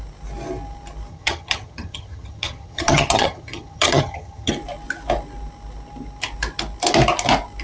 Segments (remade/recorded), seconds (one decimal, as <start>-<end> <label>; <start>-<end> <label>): 0.0-1.1 recorded; 1.1-4.5 remade; 4.5-7.6 recorded

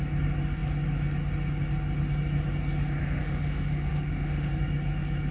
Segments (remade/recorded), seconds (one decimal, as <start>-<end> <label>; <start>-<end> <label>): 0.0-3.2 recorded; 3.2-4.5 remade; 4.5-5.3 recorded

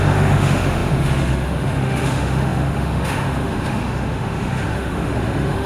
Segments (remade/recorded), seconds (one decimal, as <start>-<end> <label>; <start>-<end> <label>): 0.0-5.7 remade